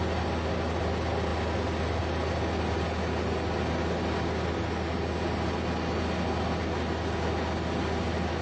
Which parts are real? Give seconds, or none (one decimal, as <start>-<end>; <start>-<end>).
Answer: 0.0-8.4